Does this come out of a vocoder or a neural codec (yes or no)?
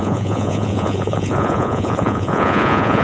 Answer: yes